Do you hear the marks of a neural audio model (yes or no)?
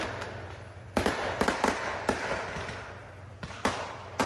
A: no